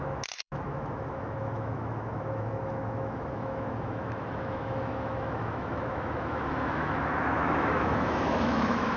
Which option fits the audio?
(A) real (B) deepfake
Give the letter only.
B